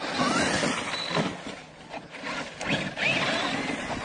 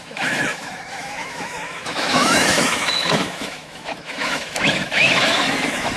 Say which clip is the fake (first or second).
second